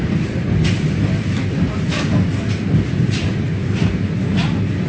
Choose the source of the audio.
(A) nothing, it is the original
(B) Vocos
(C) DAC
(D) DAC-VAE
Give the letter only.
A